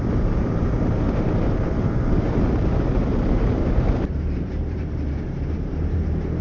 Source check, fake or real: fake